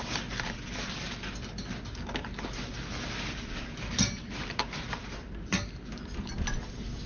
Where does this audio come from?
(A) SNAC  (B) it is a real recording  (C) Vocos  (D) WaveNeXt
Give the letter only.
B